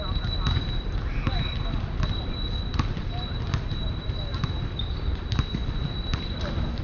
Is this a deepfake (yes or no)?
no